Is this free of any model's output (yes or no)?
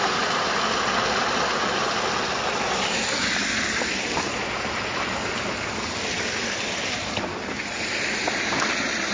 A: yes